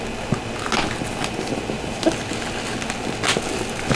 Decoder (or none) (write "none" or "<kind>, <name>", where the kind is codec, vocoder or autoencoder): none